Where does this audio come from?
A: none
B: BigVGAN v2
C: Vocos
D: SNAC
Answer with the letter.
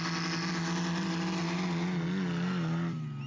A